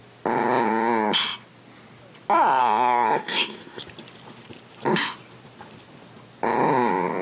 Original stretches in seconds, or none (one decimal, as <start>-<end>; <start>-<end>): 0.0-2.6; 3.8-7.2